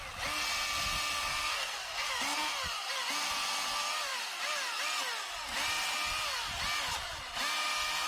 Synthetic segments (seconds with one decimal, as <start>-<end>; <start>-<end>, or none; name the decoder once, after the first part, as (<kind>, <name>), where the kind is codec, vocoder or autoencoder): 1.3-2.1 (codec, SNAC)